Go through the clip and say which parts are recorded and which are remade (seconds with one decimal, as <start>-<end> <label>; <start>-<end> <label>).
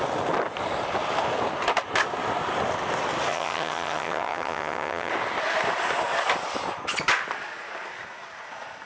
0.0-3.3 recorded; 3.3-5.1 remade; 5.1-8.9 recorded